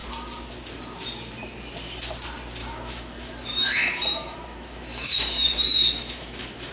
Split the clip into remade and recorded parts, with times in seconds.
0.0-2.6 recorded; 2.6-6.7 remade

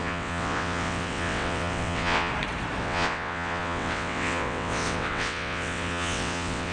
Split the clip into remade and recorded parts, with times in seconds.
0.0-2.3 remade; 2.3-2.8 recorded; 2.8-6.7 remade

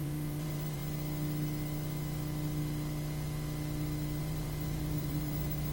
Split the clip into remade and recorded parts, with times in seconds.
0.0-0.8 remade; 0.8-4.2 recorded; 4.2-5.7 remade